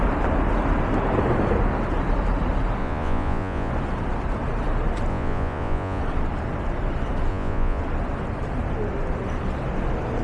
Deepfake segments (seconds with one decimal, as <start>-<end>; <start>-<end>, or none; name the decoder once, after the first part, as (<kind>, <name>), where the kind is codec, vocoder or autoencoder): 2.8-3.7 (vocoder, Vocos); 5.1-6.0; 7.3-7.8